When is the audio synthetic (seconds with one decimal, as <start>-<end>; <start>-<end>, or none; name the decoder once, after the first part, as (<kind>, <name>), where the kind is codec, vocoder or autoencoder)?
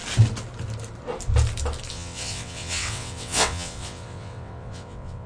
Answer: 1.9-5.3 (vocoder, WaveNeXt)